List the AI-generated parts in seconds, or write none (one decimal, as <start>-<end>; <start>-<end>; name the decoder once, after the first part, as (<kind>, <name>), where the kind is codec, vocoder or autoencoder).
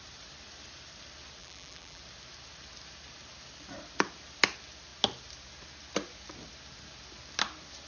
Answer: 1.4-2.0 (vocoder, BigVGAN v2)